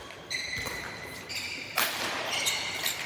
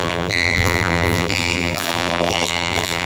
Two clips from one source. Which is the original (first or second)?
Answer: first